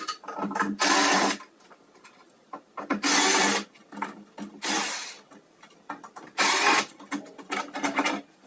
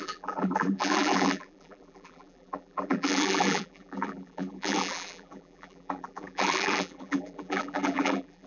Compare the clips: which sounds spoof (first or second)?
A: second